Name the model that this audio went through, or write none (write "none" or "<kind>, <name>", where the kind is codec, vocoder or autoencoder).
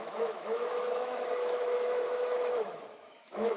autoencoder, DAC-VAE